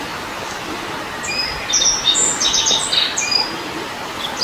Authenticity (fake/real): real